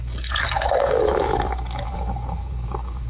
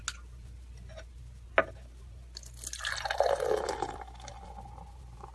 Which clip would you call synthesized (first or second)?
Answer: first